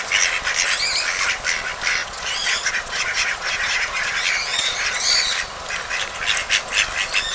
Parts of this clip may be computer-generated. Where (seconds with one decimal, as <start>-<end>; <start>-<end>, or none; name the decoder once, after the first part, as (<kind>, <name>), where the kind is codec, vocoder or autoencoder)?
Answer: 2.0-4.1 (vocoder, Vocos); 4.5-5.0